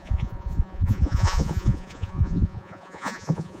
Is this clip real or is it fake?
fake